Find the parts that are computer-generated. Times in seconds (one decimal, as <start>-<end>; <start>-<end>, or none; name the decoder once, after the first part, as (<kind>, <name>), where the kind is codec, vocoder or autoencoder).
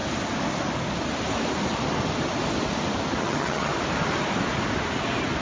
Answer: 3.2-3.7 (vocoder, HiFi-GAN)